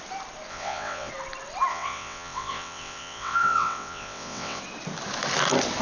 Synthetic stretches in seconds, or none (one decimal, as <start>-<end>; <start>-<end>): 0.5-1.1; 1.7-4.6